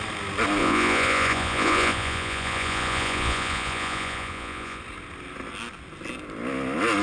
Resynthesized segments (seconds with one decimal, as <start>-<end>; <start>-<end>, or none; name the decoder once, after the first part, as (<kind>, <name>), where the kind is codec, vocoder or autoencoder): 0.6-4.8 (vocoder, Vocos)